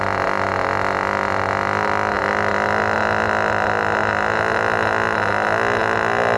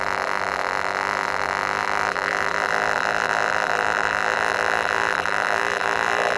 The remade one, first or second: second